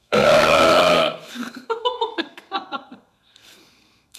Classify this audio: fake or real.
fake